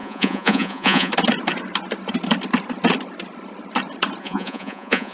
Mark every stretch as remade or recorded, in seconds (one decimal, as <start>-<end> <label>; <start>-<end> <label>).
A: 0.0-1.1 remade; 1.1-4.2 recorded; 4.2-5.1 remade